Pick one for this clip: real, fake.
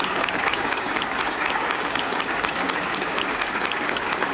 fake